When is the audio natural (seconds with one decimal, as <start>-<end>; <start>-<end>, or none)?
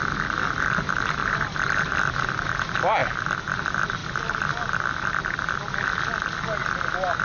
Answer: 0.0-1.2; 1.9-7.2